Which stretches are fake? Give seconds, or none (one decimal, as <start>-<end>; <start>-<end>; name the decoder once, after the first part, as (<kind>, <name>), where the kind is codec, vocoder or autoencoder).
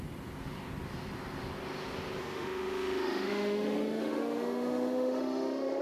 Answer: 2.2-5.8 (autoencoder, DAC-VAE)